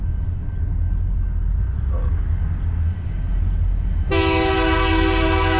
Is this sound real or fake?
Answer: real